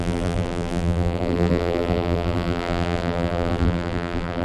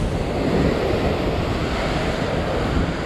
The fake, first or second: first